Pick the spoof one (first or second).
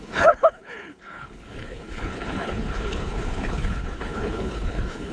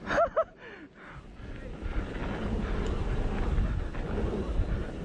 first